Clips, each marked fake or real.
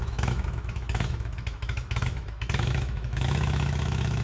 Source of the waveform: fake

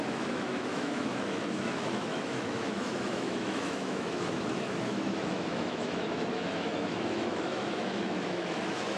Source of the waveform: fake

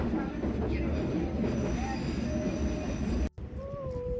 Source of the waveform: real